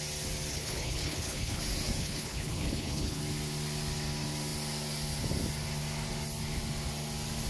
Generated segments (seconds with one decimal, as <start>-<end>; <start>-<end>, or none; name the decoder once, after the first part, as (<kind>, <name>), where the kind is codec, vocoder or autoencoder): 0.5-1.6 (codec, HILCodec); 2.0-3.2